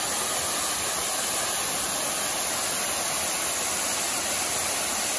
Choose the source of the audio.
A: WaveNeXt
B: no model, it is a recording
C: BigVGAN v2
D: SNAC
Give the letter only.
B